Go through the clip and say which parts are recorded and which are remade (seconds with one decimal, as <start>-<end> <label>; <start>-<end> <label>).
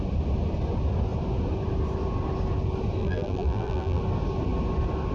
0.0-3.0 recorded; 3.0-4.0 remade; 4.0-5.1 recorded